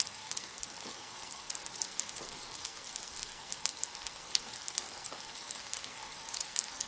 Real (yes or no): no